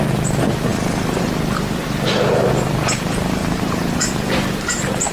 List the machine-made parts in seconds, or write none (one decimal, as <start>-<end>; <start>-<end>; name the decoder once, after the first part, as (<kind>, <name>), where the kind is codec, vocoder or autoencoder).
3.4-5.1 (vocoder, BigVGAN v2)